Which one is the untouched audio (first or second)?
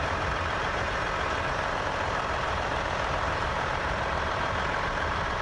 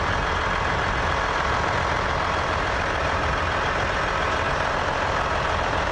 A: second